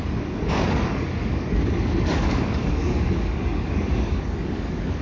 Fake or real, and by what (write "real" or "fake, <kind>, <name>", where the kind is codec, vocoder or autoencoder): fake, codec, DAC